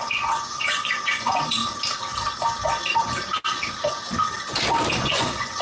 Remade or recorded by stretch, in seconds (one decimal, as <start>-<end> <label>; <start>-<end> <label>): 0.0-1.6 remade; 1.6-5.0 recorded; 5.0-5.6 remade